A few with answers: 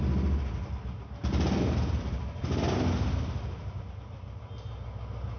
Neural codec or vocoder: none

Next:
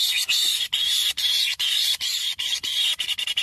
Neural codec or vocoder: none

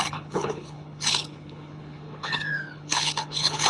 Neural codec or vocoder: codec, HILCodec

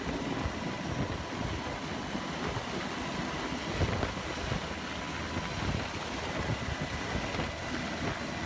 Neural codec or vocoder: none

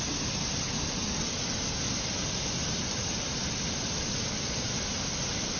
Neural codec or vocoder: none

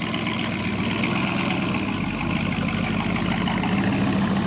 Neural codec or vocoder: none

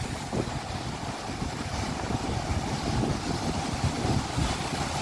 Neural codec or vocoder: none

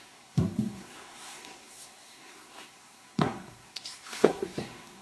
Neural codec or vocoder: codec, SNAC